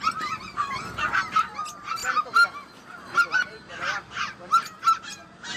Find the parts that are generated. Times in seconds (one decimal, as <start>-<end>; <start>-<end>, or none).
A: none